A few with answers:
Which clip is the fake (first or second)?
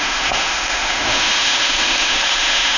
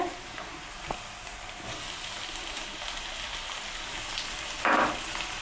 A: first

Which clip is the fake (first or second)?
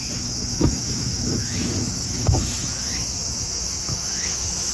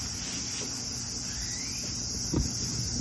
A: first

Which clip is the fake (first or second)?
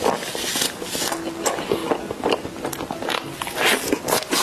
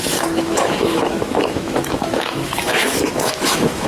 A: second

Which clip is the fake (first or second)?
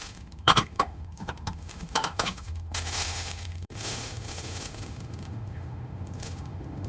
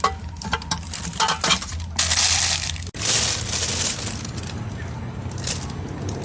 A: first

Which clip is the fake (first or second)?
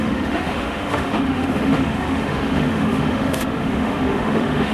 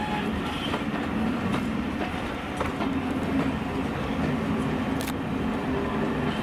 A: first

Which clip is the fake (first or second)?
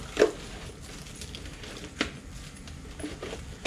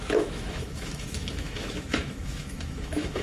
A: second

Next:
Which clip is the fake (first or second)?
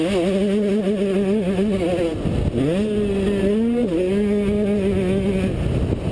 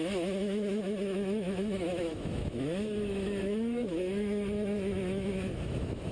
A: second